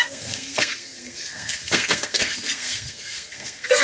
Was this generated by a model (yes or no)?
yes